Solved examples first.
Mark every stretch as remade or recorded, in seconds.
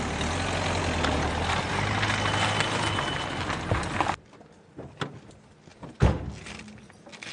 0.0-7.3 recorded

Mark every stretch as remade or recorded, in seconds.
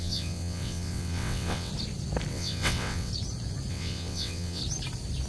0.0-1.7 remade; 1.7-2.3 recorded; 2.3-3.1 remade; 3.1-3.7 recorded; 3.7-4.6 remade; 4.6-5.3 recorded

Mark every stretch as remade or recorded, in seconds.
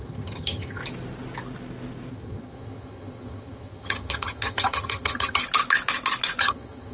0.0-0.8 remade; 0.8-2.1 recorded; 2.1-5.4 remade; 5.4-6.4 recorded; 6.4-6.9 remade